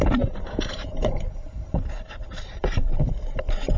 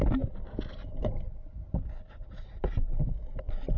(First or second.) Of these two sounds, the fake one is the first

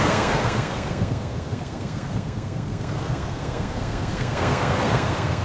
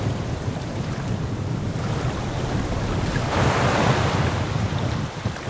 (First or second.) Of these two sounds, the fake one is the first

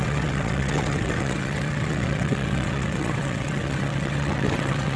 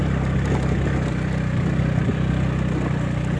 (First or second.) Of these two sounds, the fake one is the first